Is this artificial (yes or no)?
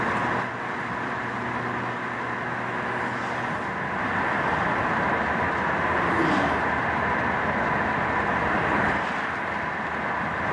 no